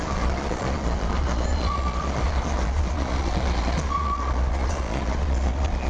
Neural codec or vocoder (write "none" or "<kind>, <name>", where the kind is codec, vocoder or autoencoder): vocoder, Vocos